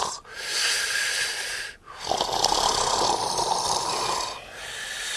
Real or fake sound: real